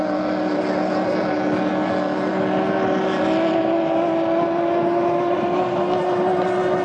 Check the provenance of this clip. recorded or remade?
recorded